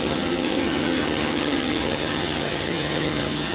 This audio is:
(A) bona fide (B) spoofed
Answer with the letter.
B